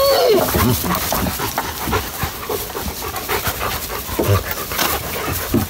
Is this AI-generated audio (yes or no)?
no